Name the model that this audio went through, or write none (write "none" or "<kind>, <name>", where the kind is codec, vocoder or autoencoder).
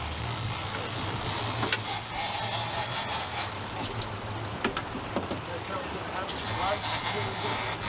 none